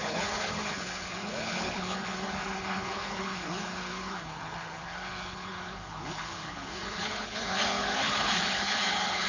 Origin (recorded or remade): remade